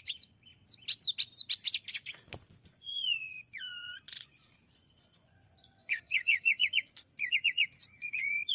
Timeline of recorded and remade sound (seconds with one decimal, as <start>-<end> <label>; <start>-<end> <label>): 0.0-0.5 remade; 0.5-1.9 recorded; 1.9-8.5 remade